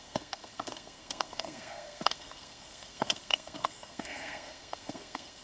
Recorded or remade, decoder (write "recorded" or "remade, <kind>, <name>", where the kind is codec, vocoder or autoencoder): remade, codec, SNAC